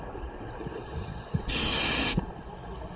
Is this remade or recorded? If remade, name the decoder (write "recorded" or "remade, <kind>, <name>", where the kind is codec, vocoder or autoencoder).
recorded